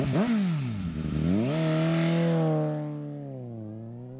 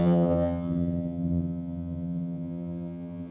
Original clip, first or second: first